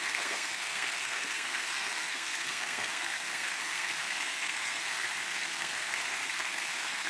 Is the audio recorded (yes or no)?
no